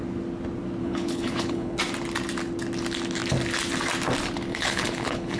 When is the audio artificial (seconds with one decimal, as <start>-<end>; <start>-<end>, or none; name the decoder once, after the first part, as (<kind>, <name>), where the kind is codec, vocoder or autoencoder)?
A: 0.8-1.8 (codec, HILCodec); 4.5-5.4